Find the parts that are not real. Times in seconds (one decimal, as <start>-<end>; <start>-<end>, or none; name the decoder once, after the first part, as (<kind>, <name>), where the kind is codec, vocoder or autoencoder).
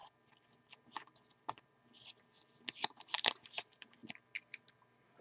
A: 0.7-1.8 (vocoder, BigVGAN v2); 2.8-4.0